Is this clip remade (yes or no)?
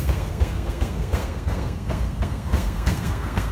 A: yes